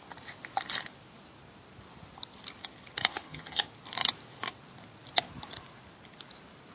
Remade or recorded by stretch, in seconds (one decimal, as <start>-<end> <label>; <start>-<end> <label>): 0.0-3.1 recorded; 3.1-3.7 remade; 3.7-6.7 recorded